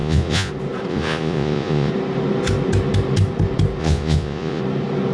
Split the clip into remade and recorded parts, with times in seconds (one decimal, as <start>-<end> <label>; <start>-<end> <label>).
0.0-0.5 remade; 0.5-0.9 recorded; 0.9-1.9 remade; 1.9-3.8 recorded; 3.8-4.6 remade; 4.6-5.1 recorded